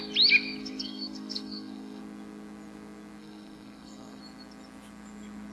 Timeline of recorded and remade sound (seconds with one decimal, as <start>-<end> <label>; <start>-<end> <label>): 0.0-0.6 recorded; 0.6-2.0 remade; 2.0-3.2 recorded; 3.2-4.2 remade; 4.2-5.5 recorded